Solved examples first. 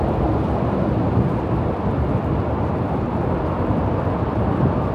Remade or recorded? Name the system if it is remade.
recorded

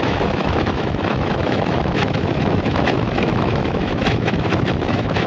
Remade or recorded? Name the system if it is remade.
remade, autoencoder, DAC-VAE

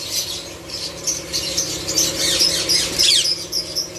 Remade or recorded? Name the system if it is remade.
remade, vocoder, BigVGAN v2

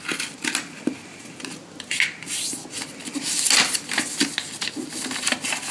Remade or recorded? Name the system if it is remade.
recorded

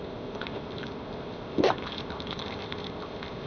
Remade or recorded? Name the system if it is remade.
remade, codec, ZipCodec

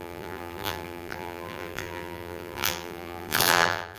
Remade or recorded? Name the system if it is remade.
remade, vocoder, BigVGAN v2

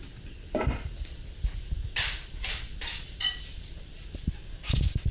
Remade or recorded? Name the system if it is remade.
recorded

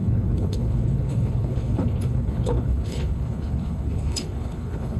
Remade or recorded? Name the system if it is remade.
remade, codec, HILCodec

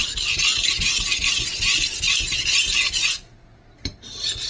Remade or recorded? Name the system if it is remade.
recorded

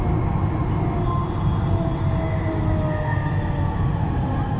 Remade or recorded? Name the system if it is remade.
recorded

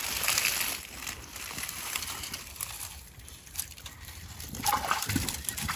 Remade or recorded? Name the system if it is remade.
recorded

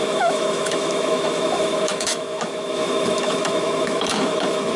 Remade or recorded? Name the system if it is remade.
remade, autoencoder, DAC-VAE